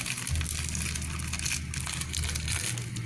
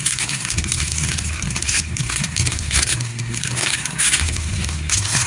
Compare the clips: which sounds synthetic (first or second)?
second